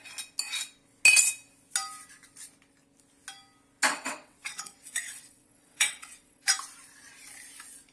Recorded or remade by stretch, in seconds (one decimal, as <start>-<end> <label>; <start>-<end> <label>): 0.0-3.9 recorded; 3.9-6.5 remade; 6.5-7.9 recorded